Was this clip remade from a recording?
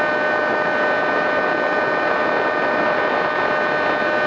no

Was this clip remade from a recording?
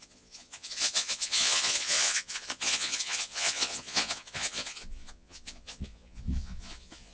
yes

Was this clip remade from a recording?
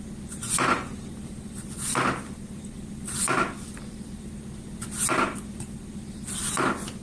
no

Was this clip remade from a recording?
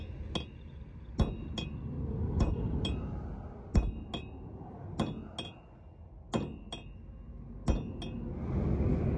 no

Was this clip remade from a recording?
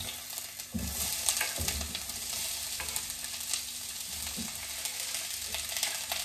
no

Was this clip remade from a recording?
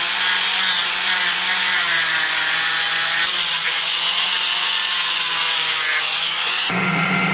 yes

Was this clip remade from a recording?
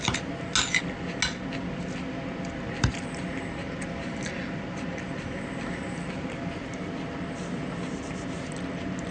no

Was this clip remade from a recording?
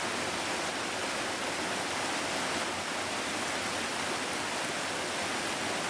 no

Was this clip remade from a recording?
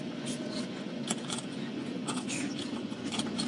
yes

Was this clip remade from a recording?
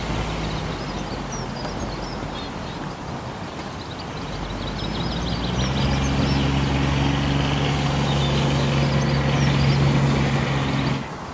no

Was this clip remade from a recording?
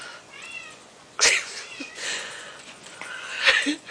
yes